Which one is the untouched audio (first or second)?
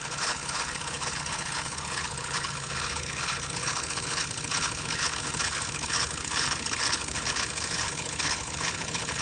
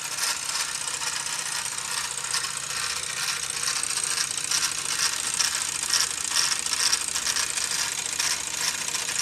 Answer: second